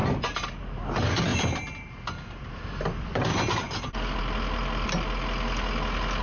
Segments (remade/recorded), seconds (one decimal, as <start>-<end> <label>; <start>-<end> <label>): 0.0-1.3 recorded; 1.3-4.2 remade; 4.2-6.2 recorded